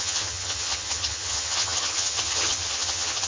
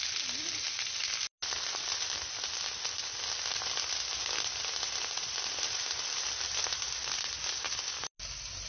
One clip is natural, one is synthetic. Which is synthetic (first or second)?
first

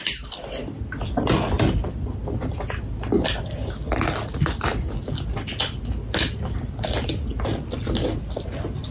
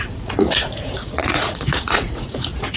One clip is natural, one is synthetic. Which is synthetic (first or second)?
second